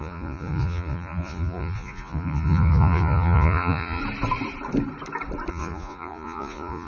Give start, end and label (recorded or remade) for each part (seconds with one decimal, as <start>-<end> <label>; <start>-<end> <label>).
0.0-4.0 remade; 4.0-5.5 recorded; 5.5-6.9 remade